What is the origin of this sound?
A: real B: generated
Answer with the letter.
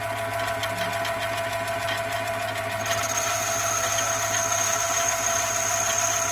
A